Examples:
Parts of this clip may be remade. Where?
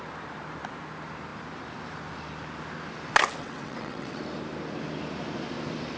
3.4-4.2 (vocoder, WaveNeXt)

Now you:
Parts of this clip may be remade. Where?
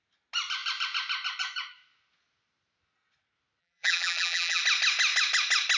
3.6-4.6 (vocoder, BigVGAN v2)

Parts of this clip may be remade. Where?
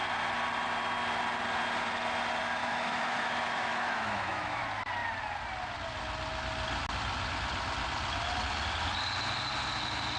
2.6-4.6 (autoencoder, DAC-VAE)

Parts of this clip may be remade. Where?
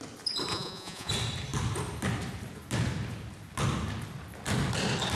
0.5-1.1 (vocoder, Vocos)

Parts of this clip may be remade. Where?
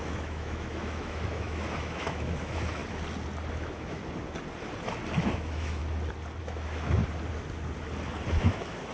0.0-2.8 (autoencoder, DAC-VAE); 3.5-4.0; 5.2-5.8; 6.4-7.0; 8.3-8.9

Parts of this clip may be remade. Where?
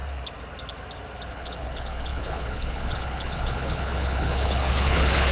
1.3-5.3 (codec, HILCodec)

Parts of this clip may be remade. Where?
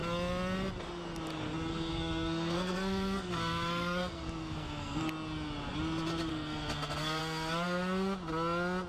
1.7-5.0 (codec, SNAC); 6.3-7.2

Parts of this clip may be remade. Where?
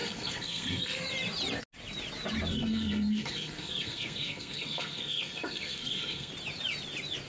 0.0-1.0 (codec, SNAC); 2.5-6.3